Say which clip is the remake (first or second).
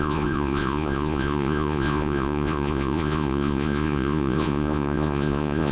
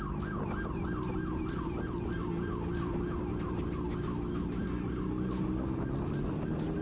first